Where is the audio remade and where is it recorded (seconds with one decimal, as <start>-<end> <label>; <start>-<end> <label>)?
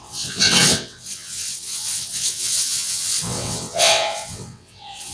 0.0-5.1 remade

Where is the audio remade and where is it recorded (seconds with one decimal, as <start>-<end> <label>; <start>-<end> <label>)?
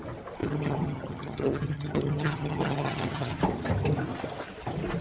0.0-0.4 recorded; 0.4-3.4 remade; 3.4-5.0 recorded